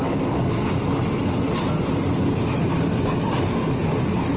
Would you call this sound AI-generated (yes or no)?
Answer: no